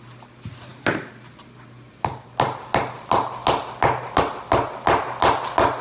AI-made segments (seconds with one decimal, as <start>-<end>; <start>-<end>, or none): none